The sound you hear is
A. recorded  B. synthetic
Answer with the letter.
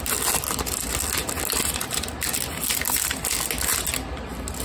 A